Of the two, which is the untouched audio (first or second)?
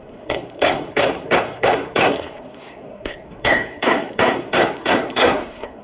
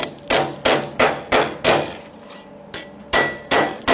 second